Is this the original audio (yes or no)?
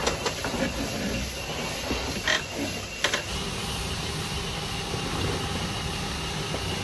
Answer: yes